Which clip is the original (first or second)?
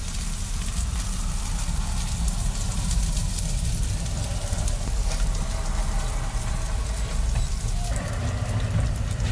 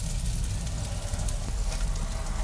second